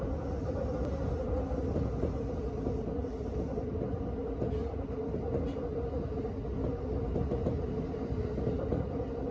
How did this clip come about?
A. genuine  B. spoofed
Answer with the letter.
A